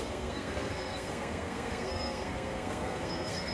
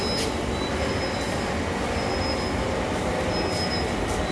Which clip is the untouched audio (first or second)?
second